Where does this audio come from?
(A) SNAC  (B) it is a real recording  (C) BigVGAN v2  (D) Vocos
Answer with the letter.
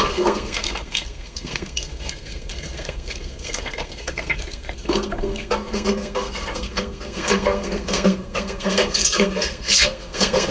A